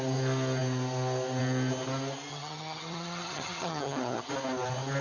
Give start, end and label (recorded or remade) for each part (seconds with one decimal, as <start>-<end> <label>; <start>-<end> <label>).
0.0-2.3 recorded; 2.3-4.3 remade; 4.3-5.0 recorded